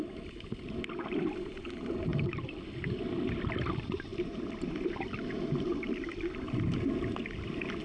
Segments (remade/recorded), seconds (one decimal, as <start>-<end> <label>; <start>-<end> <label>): 0.0-2.1 recorded; 2.1-3.5 remade; 3.5-4.1 recorded; 4.1-4.7 remade; 4.7-7.8 recorded